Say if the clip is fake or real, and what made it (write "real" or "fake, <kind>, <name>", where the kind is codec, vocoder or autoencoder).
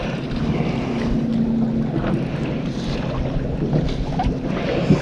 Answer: real